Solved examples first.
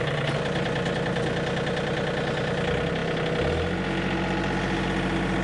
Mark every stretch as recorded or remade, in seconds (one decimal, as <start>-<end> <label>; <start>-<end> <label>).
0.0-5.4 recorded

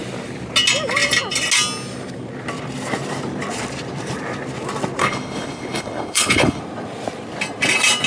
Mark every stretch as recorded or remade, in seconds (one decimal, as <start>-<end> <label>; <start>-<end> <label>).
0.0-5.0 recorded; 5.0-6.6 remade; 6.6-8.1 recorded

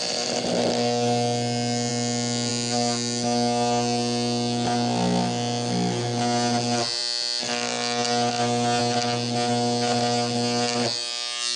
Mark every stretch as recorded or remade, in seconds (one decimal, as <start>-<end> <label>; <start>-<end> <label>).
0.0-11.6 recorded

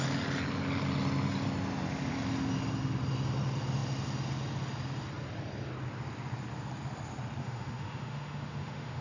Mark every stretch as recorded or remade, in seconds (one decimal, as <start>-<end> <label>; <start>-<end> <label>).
0.0-7.4 recorded; 7.4-9.0 remade

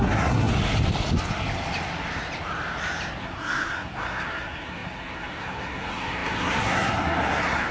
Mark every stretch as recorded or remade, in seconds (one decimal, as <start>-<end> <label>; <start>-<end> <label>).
0.0-0.5 remade; 0.5-3.2 recorded; 3.2-7.7 remade

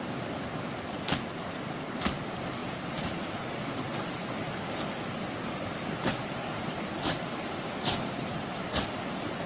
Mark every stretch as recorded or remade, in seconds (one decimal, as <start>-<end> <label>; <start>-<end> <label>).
0.0-9.5 recorded

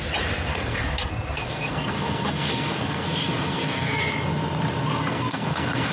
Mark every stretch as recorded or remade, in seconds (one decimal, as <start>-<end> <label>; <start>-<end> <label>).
0.0-0.5 recorded; 0.5-4.0 remade; 4.0-5.1 recorded; 5.1-5.9 remade